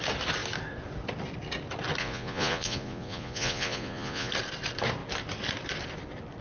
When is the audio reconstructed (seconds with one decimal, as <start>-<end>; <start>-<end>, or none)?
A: 2.0-4.3